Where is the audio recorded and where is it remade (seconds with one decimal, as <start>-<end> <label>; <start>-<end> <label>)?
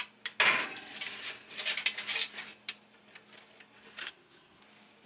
0.0-4.0 recorded; 4.0-4.6 remade; 4.6-5.1 recorded